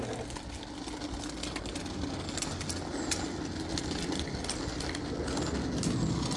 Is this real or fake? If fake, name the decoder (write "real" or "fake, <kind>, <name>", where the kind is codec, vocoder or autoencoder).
real